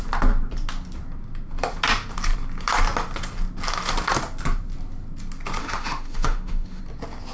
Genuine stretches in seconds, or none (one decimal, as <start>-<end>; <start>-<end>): 0.0-5.6; 6.8-7.3

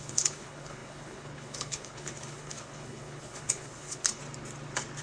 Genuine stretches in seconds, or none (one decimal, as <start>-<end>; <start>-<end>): 4.2-5.0

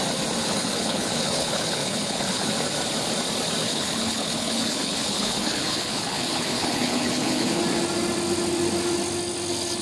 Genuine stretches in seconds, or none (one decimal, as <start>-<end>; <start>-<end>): 0.0-0.4; 2.5-3.6; 7.6-9.8